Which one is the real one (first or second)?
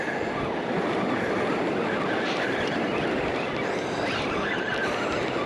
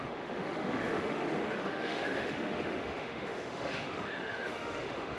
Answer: first